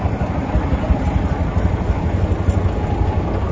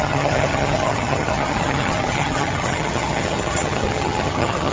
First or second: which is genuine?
first